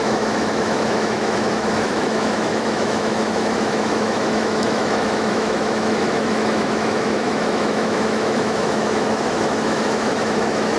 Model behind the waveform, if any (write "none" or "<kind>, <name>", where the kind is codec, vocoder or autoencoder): autoencoder, DAC-VAE